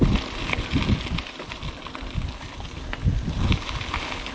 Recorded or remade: recorded